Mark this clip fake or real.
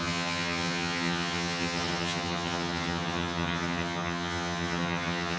fake